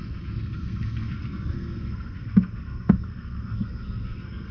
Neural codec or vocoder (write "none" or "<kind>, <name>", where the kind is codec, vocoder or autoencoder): codec, SNAC